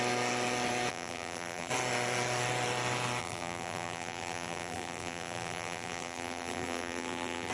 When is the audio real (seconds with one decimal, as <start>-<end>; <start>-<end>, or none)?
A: 0.0-0.9; 1.7-3.2